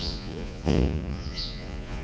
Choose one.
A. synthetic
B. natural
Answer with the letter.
A